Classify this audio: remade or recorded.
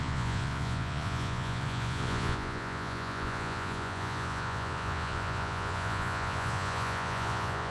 remade